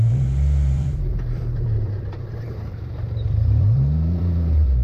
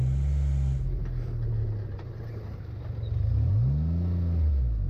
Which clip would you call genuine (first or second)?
second